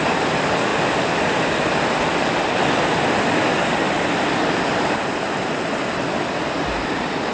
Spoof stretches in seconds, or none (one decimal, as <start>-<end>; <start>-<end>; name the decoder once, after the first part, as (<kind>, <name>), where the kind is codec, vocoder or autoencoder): none